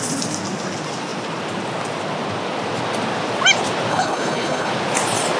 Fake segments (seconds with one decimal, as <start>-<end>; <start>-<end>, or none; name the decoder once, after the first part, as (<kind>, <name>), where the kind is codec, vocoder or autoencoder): 3.9-4.7 (codec, HILCodec)